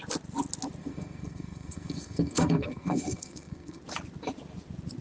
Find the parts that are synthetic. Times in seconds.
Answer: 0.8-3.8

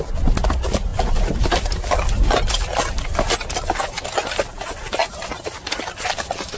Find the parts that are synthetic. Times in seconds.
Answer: none